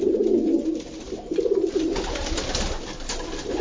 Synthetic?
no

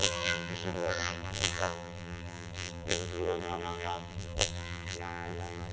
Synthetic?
yes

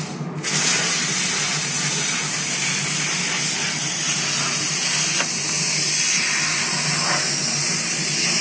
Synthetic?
no